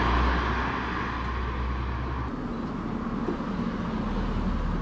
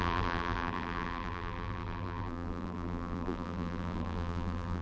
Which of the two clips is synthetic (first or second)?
second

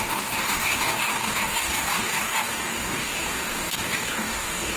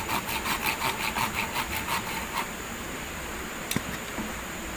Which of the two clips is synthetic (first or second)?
first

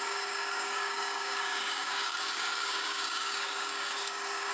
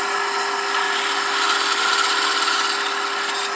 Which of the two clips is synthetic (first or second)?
first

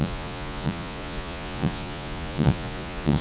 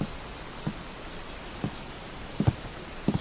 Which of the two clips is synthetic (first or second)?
first